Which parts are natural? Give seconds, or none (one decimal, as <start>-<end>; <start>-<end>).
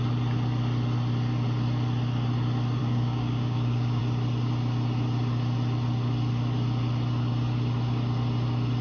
0.0-2.8; 4.0-8.8